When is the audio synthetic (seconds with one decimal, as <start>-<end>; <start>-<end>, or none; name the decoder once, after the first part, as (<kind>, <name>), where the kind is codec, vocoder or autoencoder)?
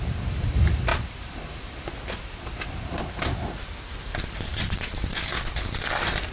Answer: 0.9-3.0 (vocoder, BigVGAN v2)